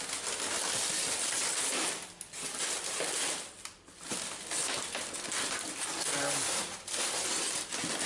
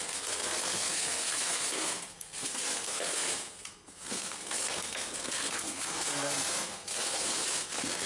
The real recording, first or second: first